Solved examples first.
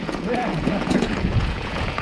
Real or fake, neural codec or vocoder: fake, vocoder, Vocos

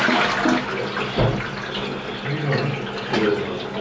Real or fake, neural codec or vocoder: real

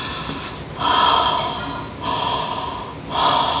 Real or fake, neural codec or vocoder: real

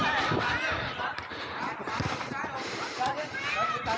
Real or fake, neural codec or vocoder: real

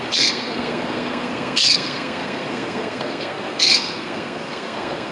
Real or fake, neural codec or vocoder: fake, codec, SNAC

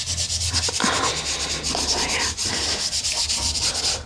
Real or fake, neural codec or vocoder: real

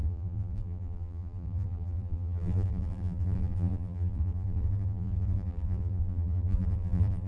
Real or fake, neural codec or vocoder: fake, vocoder, BigVGAN v2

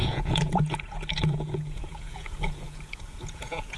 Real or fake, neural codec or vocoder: fake, vocoder, Vocos